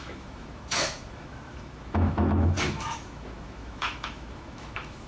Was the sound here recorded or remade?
remade